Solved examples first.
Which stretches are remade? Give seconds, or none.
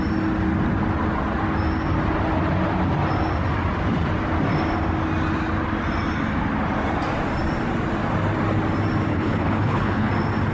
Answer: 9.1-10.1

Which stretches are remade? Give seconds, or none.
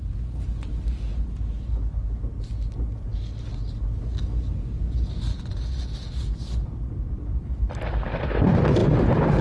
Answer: none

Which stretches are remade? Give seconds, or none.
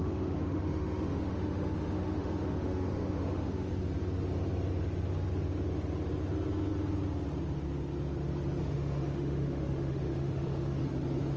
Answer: 0.0-3.7; 8.6-10.8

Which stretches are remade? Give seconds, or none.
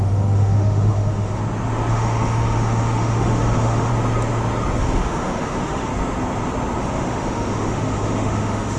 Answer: 0.0-1.4; 1.9-3.9; 4.8-5.9; 6.8-8.8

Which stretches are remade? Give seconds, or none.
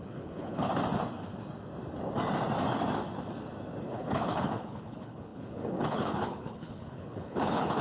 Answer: 0.0-0.7; 3.8-7.8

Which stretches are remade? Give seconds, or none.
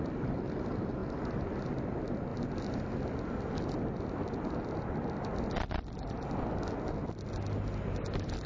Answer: none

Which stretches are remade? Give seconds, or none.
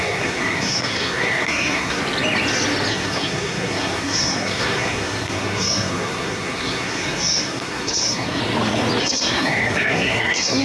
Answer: 0.0-2.0; 2.9-8.4; 9.0-10.6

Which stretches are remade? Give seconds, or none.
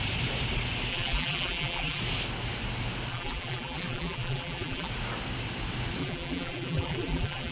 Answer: 0.9-2.0; 3.1-4.9; 6.0-7.5